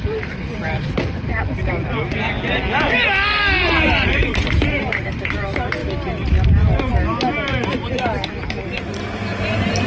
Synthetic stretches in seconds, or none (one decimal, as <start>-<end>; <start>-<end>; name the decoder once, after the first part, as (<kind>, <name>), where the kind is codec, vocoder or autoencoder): 0.0-1.3 (vocoder, BigVGAN v2); 3.8-5.8; 9.4-9.9